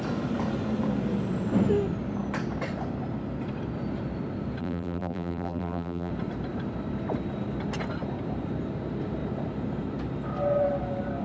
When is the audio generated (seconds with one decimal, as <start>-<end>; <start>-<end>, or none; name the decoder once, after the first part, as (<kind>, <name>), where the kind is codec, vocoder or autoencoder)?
4.6-6.1 (vocoder, BigVGAN v2)

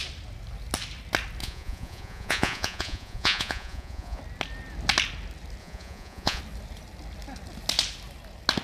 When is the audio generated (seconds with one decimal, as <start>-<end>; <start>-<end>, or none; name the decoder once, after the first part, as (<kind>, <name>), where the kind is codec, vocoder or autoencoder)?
1.4-4.2 (vocoder, Vocos); 5.6-6.4